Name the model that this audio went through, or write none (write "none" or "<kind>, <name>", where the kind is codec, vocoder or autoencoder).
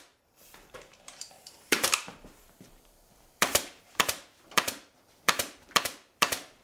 vocoder, BigVGAN v2